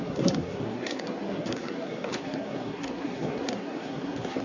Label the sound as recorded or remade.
remade